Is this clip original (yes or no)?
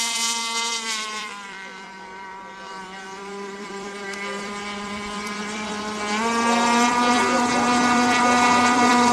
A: no